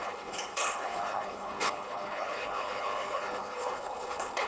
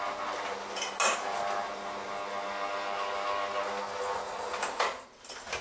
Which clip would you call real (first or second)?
second